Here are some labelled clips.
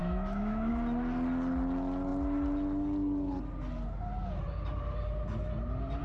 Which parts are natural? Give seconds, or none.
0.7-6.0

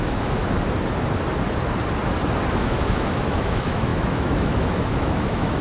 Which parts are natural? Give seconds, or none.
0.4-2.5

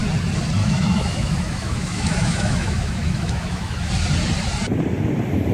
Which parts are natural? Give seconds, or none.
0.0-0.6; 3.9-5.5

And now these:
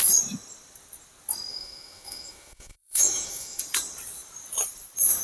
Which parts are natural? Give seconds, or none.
0.0-1.5; 3.6-5.2

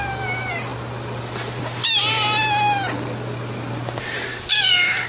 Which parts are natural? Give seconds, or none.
0.0-5.1

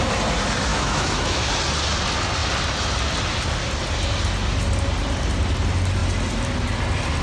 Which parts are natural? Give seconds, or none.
0.0-0.7; 1.5-7.2

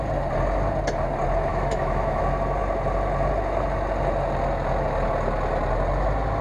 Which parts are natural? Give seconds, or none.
0.0-1.5; 2.2-6.4

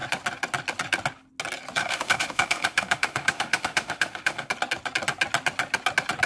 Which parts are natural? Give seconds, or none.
0.0-1.8; 4.5-6.3